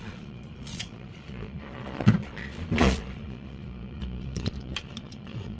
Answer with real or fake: fake